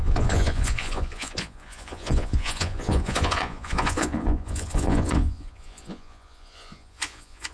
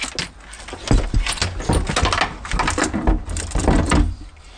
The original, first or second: second